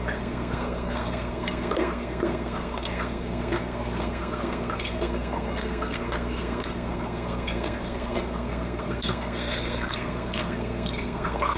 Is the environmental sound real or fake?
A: fake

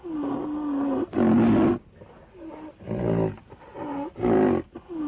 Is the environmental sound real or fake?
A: real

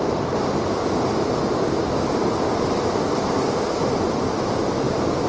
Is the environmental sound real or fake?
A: real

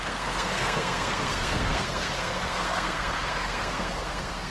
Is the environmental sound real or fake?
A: fake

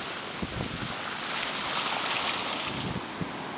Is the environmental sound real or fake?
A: real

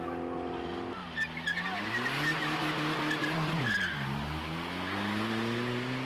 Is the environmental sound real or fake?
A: real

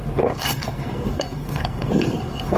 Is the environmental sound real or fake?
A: fake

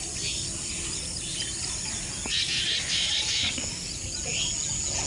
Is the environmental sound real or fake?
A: real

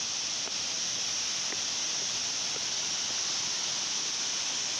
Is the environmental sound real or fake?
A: real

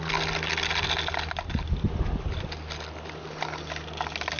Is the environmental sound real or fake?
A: real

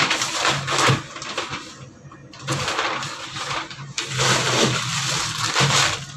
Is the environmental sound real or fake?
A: real